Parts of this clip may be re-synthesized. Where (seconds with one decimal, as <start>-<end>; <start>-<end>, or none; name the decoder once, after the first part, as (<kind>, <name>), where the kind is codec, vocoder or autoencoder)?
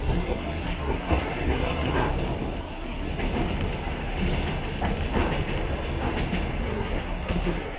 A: 0.0-2.1 (codec, SNAC); 2.6-3.1; 6.6-7.8